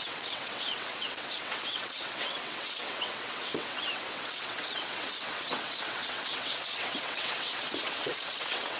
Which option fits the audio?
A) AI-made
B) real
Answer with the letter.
A